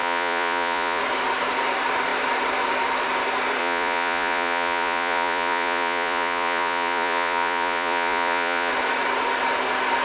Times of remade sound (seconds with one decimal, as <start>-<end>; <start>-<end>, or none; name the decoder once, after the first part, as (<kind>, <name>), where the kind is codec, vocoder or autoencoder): 0.0-1.0 (vocoder, Vocos); 3.6-8.7